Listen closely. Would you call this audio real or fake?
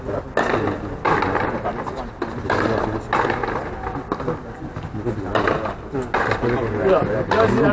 real